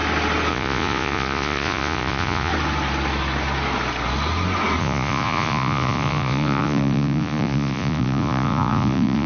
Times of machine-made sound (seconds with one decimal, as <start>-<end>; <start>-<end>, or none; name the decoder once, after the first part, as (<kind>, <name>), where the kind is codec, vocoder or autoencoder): 0.5-2.5 (vocoder, Vocos); 4.8-9.3